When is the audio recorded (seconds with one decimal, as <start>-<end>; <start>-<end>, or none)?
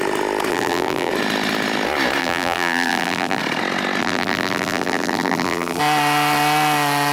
0.0-0.5; 1.1-2.2; 3.4-4.0; 5.8-7.1